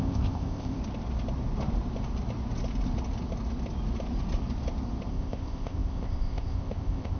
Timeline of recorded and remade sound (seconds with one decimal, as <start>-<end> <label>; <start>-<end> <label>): 0.0-0.8 remade; 0.8-5.1 recorded; 5.1-7.2 remade